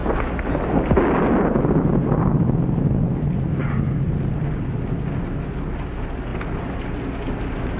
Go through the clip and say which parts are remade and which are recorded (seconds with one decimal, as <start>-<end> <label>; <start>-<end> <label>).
0.0-7.8 recorded